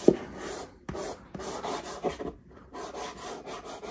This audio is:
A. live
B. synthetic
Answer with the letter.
A